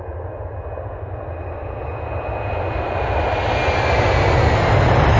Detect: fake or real real